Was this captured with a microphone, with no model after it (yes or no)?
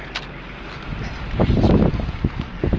yes